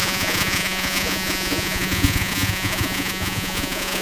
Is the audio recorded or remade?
remade